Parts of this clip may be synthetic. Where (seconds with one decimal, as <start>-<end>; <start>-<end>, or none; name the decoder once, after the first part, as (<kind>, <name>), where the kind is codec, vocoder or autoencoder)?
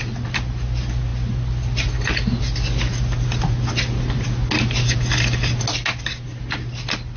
none